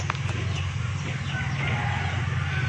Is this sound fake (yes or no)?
no